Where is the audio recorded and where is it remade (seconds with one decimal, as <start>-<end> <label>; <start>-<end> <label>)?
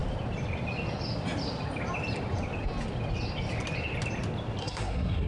0.0-4.6 recorded; 4.6-5.3 remade